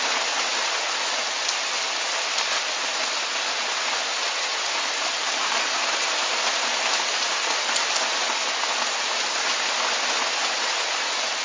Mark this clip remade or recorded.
recorded